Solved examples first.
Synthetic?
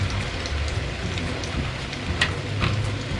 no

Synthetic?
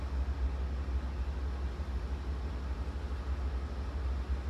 no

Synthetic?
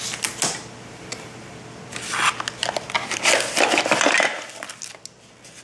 no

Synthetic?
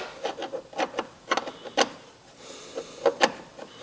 no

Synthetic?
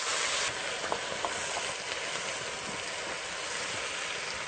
no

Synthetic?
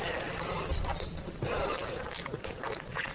no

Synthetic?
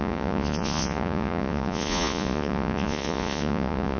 yes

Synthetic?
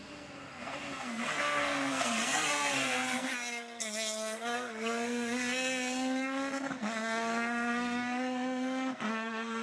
yes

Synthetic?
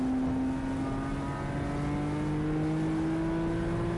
no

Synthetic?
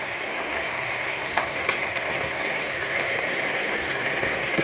yes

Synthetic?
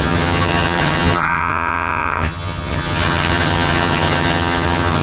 yes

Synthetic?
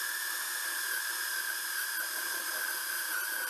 yes